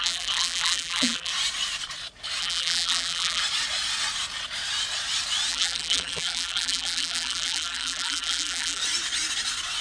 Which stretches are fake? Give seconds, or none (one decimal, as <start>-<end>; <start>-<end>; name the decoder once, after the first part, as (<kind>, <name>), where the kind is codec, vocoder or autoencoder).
0.0-1.3 (vocoder, BigVGAN v2); 2.4-3.4; 5.5-8.8